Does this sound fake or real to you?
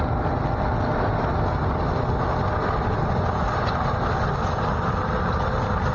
real